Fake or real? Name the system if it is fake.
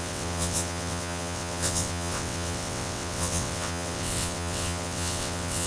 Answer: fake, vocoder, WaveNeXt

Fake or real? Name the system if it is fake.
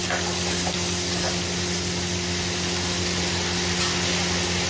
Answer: real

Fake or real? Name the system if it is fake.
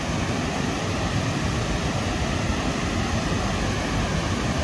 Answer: real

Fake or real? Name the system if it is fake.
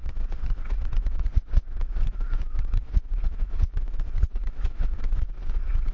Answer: fake, vocoder, WaveNeXt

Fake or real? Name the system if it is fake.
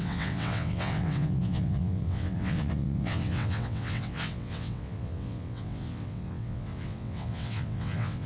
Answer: fake, vocoder, WaveNeXt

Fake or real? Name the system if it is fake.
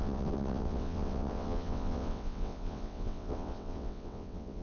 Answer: fake, vocoder, WaveNeXt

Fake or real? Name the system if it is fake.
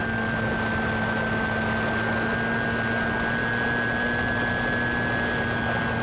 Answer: real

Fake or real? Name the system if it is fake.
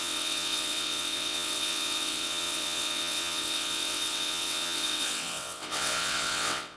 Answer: fake, vocoder, WaveNeXt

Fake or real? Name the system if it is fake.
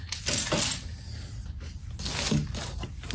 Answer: real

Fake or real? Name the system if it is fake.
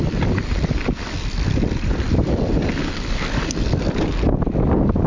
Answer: real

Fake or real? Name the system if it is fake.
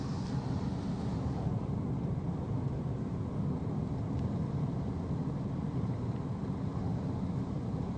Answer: real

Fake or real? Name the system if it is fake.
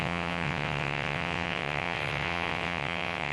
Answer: fake, vocoder, WaveNeXt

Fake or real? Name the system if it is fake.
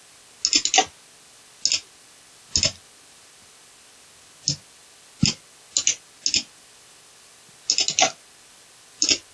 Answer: real